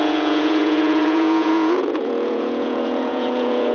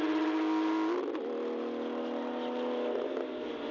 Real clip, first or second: second